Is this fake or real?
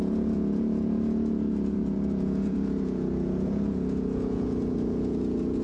fake